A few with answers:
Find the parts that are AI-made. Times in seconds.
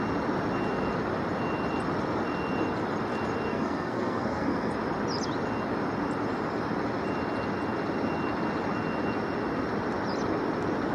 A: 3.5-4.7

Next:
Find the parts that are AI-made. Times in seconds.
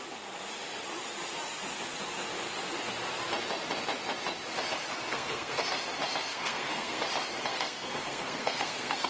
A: 5.1-5.6; 6.3-7.0; 7.5-9.1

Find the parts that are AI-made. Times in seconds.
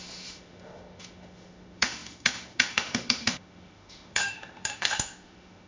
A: 0.0-5.7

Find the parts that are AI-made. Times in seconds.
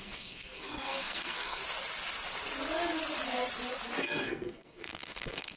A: 0.0-1.6; 4.0-5.6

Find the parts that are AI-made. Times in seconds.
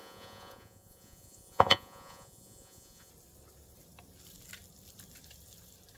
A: 0.0-3.1